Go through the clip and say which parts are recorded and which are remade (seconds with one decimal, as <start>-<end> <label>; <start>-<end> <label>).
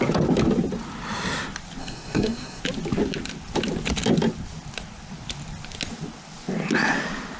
0.0-1.8 recorded; 1.8-2.6 remade; 2.6-7.4 recorded